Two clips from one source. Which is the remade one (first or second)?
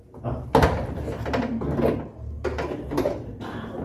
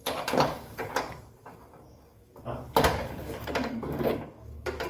second